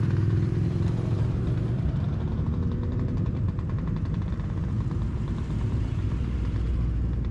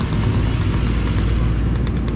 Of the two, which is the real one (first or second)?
second